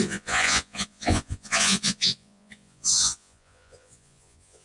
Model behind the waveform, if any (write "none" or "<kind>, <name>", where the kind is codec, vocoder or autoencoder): vocoder, Vocos